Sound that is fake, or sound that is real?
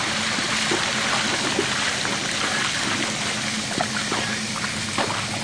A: real